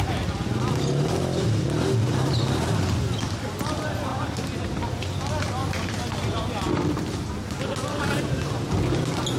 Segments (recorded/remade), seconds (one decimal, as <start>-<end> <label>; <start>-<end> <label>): 0.0-9.4 recorded